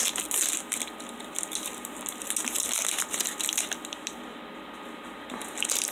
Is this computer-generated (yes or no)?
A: no